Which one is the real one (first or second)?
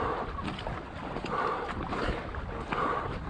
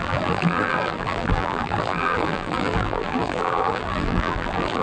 first